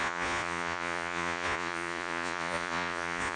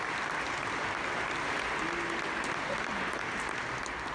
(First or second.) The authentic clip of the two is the second